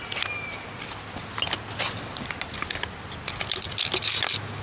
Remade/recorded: recorded